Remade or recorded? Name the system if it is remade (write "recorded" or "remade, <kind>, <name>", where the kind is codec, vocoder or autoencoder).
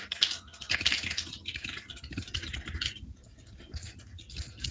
recorded